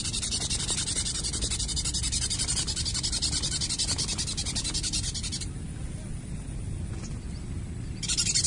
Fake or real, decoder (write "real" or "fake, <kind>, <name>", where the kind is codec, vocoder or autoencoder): real